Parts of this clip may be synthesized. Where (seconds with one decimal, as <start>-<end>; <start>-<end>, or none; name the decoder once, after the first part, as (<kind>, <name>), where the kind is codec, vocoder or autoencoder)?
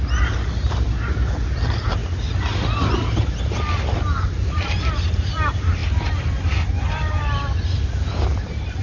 none